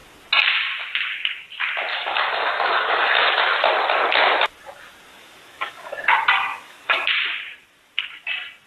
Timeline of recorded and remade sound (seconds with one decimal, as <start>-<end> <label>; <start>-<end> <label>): 0.0-1.9 recorded; 1.9-3.3 remade; 3.3-5.1 recorded; 5.1-5.9 remade; 5.9-6.5 recorded; 6.5-7.1 remade; 7.1-8.7 recorded